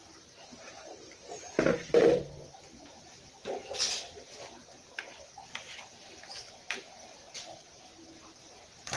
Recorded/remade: recorded